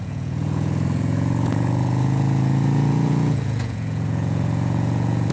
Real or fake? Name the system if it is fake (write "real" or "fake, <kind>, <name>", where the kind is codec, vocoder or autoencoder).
fake, vocoder, Vocos